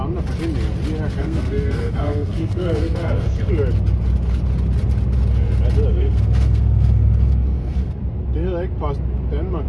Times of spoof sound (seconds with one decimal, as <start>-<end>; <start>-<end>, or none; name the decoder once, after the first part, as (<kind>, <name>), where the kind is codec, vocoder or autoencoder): 1.2-3.5 (codec, SNAC); 5.9-8.0